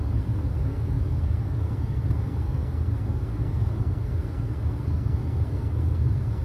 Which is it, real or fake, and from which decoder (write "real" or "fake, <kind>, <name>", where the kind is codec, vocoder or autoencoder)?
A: fake, codec, SNAC